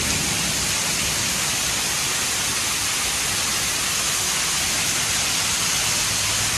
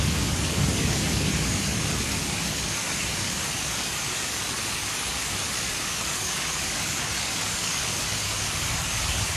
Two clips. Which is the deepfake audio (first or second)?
second